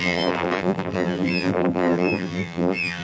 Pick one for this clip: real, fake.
fake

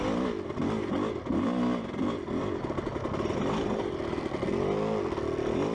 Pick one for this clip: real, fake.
real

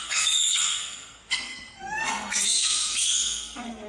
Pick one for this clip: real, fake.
fake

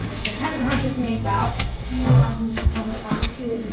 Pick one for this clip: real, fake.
fake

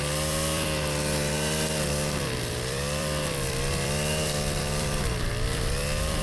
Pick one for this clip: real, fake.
fake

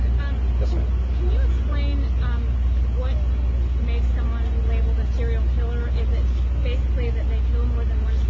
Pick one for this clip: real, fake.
real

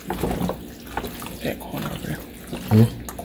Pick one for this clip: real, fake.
real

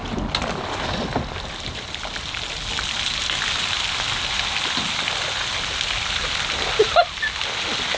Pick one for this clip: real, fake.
real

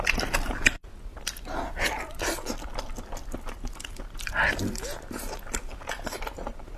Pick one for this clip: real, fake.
real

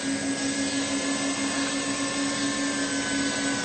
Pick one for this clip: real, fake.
real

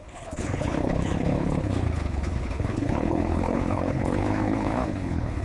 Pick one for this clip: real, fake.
fake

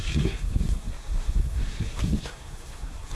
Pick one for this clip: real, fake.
fake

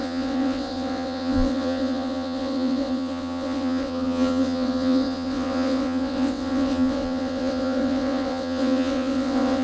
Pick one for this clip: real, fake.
fake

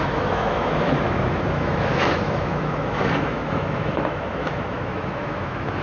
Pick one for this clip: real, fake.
fake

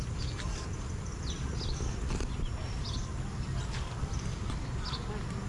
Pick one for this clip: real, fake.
real